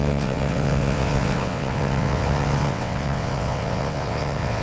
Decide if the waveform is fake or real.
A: fake